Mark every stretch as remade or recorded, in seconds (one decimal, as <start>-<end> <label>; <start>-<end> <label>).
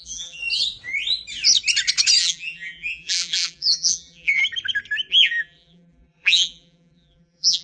0.0-0.4 remade; 0.4-2.2 recorded; 2.2-4.4 remade; 4.4-5.1 recorded; 5.1-7.6 remade